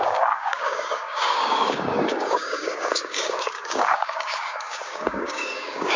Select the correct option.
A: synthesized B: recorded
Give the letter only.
A